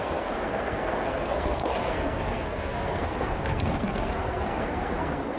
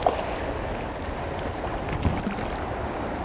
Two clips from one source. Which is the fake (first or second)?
first